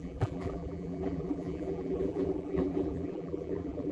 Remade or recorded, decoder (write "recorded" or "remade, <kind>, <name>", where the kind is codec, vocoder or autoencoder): remade, vocoder, BigVGAN v2